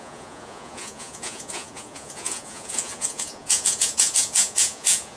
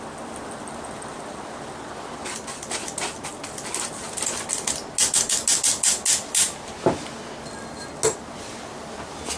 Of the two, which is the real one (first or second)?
second